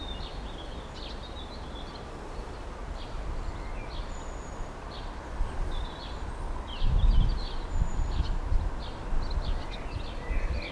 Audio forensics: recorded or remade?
recorded